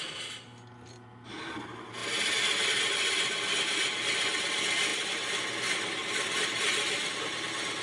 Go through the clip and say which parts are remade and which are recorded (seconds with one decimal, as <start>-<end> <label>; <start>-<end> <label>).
0.0-2.0 recorded; 2.0-2.8 remade; 2.8-4.9 recorded; 4.9-5.4 remade; 5.4-7.8 recorded